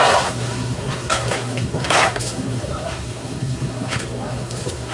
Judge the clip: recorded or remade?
remade